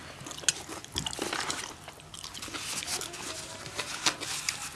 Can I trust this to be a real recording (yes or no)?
yes